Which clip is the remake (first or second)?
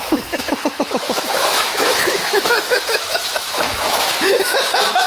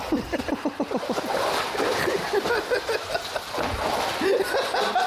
first